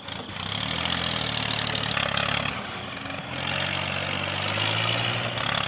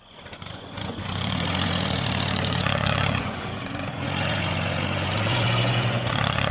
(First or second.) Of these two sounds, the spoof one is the second